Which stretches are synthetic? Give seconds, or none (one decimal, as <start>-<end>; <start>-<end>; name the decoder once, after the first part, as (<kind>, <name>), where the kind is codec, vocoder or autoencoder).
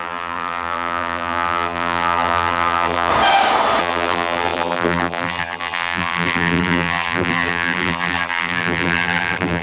0.0-3.1 (vocoder, BigVGAN v2); 3.8-9.6